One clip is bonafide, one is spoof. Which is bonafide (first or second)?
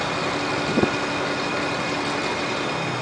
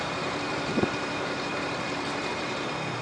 first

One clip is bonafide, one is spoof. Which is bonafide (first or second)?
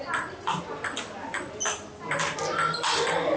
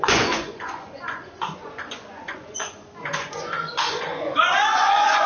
first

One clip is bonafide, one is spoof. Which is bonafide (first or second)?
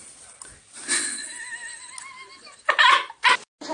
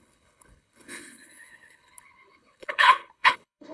first